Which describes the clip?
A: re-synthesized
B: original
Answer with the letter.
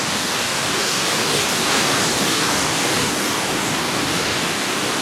A